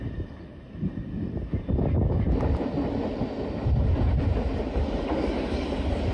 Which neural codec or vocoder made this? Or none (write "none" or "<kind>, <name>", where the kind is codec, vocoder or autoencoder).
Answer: none